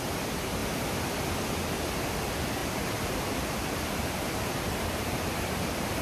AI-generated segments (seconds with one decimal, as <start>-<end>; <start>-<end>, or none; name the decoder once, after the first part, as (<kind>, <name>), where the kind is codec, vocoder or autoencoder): 0.6-1.3 (vocoder, BigVGAN v2); 2.6-5.4